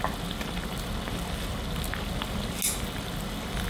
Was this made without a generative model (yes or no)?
yes